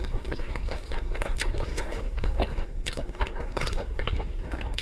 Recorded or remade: remade